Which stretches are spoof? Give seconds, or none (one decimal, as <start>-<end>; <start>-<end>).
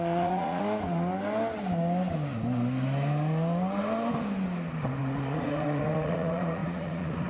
0.0-0.6; 5.0-7.3